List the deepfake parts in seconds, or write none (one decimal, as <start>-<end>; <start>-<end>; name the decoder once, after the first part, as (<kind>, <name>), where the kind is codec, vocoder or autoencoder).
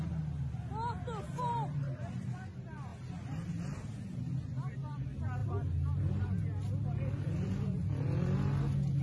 none